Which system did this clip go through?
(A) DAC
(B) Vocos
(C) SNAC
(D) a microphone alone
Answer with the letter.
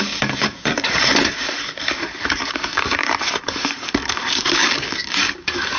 A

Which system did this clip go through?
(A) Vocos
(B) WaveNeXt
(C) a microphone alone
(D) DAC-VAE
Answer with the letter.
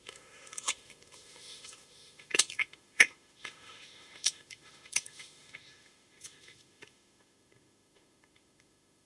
D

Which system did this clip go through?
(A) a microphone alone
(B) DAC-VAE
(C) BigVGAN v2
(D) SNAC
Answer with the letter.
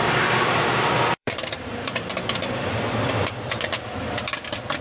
C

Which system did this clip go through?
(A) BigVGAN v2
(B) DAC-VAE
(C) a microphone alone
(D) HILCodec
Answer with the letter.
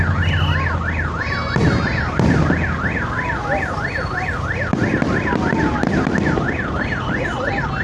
C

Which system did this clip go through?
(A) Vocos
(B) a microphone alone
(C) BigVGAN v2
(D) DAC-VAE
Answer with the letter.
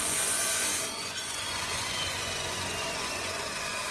A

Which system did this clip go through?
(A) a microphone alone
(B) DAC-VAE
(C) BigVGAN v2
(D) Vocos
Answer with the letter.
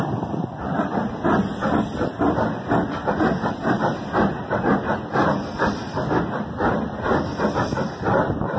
A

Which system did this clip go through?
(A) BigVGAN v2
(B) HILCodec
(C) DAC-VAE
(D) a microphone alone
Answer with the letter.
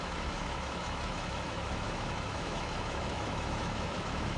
C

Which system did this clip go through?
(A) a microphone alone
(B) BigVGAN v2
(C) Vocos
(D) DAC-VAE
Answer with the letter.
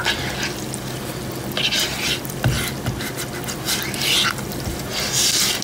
A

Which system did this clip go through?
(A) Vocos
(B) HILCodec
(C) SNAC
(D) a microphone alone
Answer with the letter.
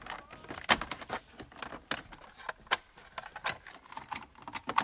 D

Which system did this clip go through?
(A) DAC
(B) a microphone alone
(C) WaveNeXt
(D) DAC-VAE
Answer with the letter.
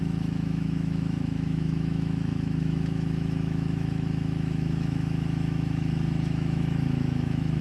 D